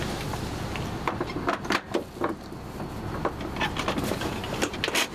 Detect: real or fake real